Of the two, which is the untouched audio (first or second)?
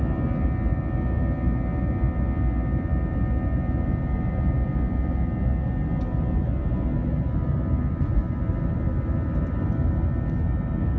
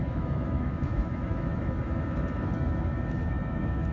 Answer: first